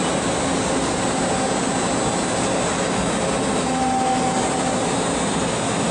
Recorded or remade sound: recorded